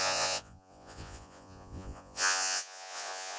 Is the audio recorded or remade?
remade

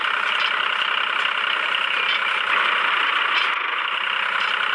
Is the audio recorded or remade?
recorded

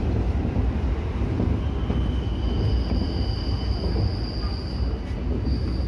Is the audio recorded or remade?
recorded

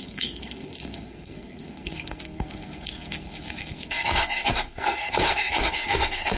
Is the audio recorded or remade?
remade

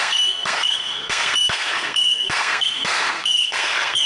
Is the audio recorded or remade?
remade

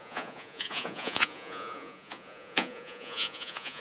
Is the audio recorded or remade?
remade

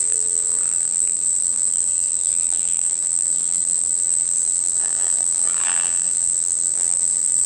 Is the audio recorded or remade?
remade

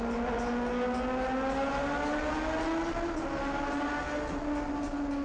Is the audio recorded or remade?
recorded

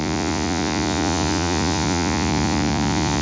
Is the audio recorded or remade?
remade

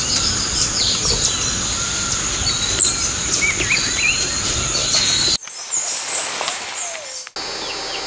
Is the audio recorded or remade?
recorded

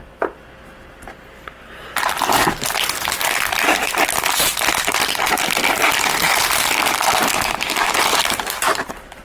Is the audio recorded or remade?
recorded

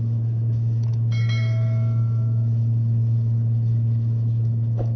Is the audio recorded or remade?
remade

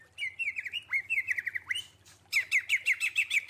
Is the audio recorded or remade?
recorded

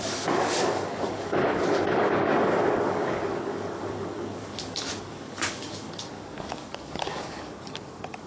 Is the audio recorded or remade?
remade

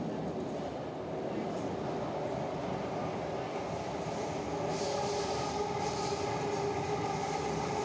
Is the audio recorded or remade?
recorded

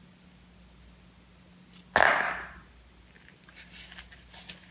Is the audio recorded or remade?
recorded